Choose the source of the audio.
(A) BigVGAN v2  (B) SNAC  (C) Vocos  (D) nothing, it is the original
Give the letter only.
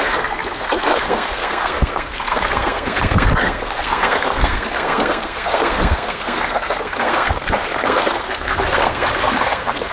B